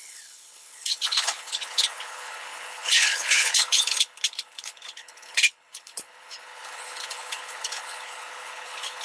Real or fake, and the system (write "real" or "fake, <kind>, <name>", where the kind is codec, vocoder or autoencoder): fake, codec, HILCodec